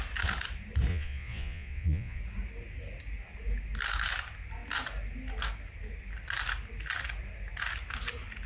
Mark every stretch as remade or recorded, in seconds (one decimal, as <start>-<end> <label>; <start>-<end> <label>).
0.0-0.9 recorded; 0.9-2.2 remade; 2.2-8.5 recorded